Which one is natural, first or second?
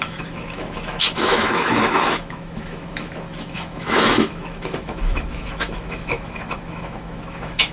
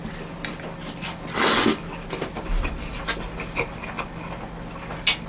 second